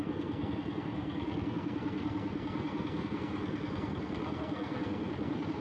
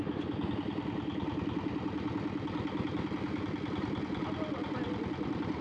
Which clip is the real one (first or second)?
second